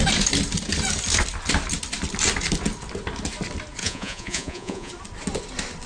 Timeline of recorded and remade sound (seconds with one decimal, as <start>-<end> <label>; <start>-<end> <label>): 0.0-3.8 recorded; 3.8-4.9 remade; 4.9-5.9 recorded